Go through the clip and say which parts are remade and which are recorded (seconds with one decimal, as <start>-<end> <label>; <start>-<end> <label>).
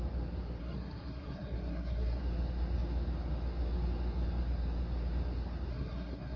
0.0-0.6 recorded; 0.6-2.2 remade; 2.2-5.7 recorded; 5.7-6.4 remade